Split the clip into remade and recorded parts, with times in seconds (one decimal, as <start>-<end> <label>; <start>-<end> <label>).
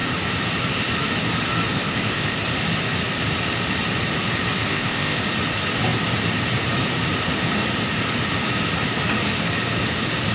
0.0-1.7 recorded; 1.7-2.4 remade; 2.4-4.7 recorded; 4.7-5.2 remade; 5.2-10.3 recorded